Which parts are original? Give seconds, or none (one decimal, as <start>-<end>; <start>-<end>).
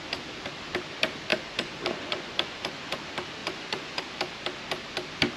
0.0-1.3; 3.0-3.4; 4.0-5.4